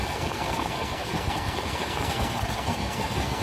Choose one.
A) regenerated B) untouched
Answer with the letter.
A